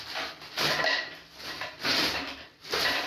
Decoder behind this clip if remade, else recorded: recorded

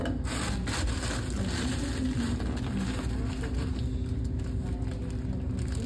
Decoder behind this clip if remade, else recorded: recorded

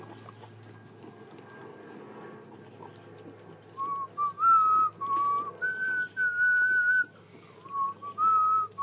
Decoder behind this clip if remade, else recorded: recorded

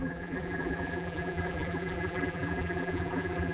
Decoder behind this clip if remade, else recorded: remade, vocoder, BigVGAN v2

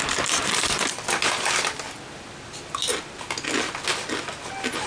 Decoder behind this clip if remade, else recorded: recorded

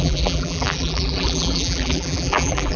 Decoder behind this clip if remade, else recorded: remade, vocoder, BigVGAN v2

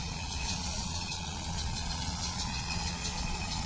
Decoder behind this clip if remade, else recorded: remade, vocoder, Vocos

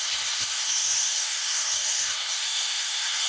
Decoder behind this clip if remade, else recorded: remade, codec, SNAC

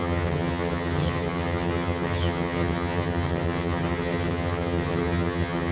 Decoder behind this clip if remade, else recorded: remade, vocoder, HiFi-GAN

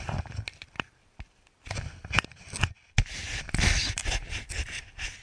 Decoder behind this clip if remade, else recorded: recorded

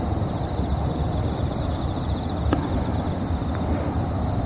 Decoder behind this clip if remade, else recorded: remade, vocoder, BigVGAN v2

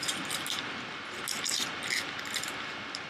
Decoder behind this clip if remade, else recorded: recorded